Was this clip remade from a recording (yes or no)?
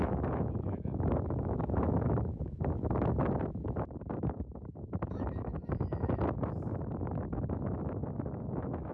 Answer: yes